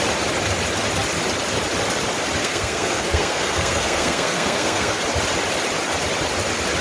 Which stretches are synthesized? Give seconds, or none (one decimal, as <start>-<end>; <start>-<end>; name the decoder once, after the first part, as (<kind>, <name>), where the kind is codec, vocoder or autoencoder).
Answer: 2.4-5.0 (codec, SNAC)